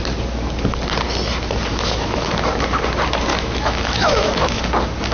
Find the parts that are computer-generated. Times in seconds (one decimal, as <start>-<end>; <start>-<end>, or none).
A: 1.7-2.3; 3.3-4.6